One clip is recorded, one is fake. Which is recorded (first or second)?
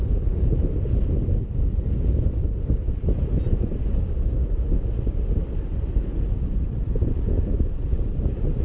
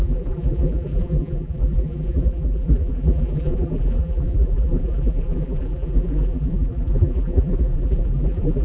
first